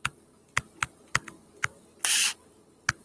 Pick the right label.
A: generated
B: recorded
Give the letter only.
B